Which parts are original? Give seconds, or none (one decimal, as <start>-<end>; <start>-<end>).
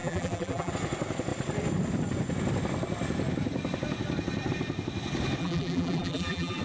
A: 0.7-5.4